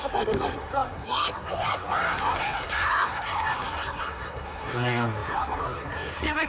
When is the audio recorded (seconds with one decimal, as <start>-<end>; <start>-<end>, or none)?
none